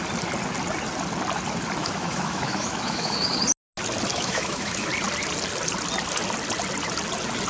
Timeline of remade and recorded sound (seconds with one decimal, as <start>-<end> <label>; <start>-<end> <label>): 0.0-1.8 recorded; 1.8-3.4 remade; 3.4-4.1 recorded; 4.1-4.9 remade; 4.9-7.5 recorded